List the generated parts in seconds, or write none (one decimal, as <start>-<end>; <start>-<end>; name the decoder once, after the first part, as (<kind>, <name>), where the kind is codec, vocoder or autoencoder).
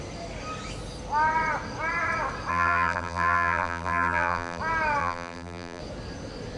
2.5-4.6 (vocoder, BigVGAN v2); 5.0-5.8